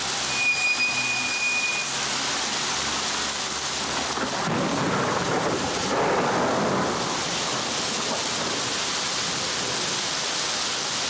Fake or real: real